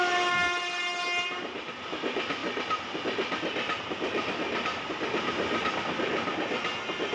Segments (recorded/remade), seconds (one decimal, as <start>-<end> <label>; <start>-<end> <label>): 0.0-7.1 recorded